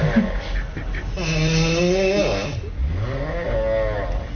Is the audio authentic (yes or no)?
yes